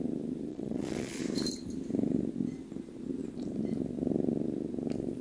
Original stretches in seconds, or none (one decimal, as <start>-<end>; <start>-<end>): 0.0-0.5; 1.2-5.2